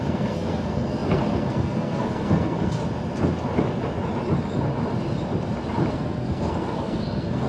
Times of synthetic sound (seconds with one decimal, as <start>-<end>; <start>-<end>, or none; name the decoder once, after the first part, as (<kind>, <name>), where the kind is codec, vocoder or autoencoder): 0.0-2.8 (codec, SNAC); 5.9-7.5